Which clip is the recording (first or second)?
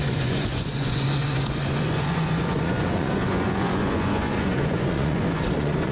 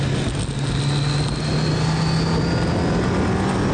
second